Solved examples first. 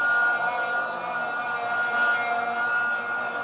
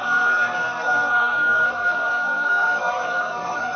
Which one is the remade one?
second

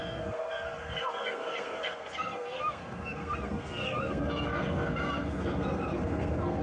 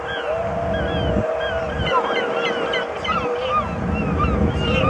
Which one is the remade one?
first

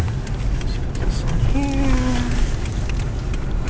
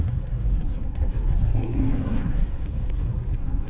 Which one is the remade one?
second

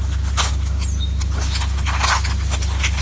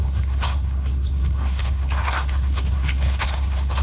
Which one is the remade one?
second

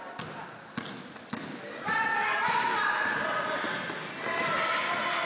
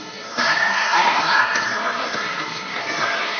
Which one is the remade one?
second